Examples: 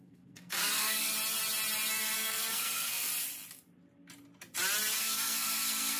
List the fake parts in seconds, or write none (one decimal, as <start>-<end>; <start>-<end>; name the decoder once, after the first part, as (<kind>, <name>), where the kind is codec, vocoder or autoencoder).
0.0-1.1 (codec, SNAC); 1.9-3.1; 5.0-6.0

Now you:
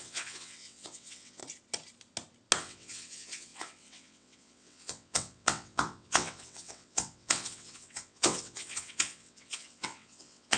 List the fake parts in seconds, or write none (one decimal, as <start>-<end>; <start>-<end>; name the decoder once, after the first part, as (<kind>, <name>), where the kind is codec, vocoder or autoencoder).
0.0-1.4 (vocoder, WaveNeXt); 2.6-10.6

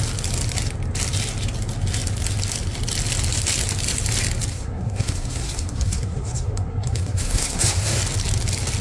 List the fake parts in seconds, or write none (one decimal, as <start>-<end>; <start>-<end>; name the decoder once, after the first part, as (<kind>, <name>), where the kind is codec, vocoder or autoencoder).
4.5-8.0 (codec, SNAC)

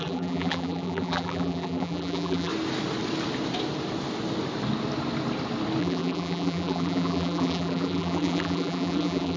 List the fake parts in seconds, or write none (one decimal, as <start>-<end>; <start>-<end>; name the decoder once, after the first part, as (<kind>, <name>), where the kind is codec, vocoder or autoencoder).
0.0-2.5 (vocoder, BigVGAN v2); 5.8-9.4